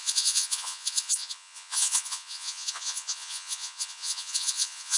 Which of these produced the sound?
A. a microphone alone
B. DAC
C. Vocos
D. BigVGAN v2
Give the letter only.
C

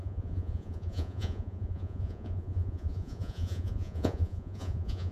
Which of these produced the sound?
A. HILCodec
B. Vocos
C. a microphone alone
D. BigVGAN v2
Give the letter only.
B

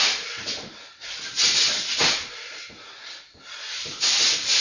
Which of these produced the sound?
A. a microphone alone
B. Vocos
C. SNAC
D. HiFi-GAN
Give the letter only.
A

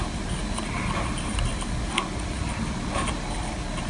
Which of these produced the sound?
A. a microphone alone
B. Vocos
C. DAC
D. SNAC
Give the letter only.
A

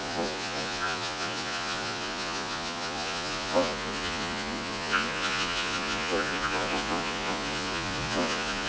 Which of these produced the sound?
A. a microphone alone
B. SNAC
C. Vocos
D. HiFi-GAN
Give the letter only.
C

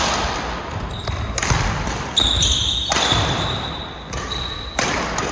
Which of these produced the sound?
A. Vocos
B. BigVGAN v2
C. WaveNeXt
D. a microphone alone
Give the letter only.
D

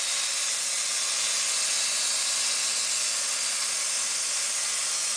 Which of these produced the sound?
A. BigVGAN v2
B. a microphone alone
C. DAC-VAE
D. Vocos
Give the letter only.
B